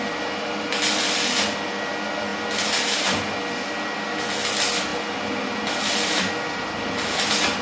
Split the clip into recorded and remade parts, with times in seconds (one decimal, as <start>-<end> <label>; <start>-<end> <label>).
0.0-7.6 recorded